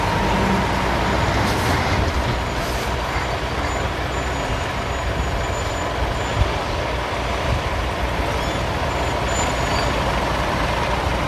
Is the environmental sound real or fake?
real